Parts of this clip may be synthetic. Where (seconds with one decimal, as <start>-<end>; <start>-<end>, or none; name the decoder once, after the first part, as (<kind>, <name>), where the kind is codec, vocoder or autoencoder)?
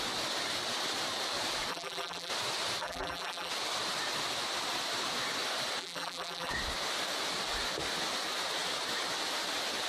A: 1.7-2.3 (vocoder, BigVGAN v2); 2.8-3.5; 5.8-6.5